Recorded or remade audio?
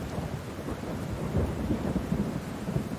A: remade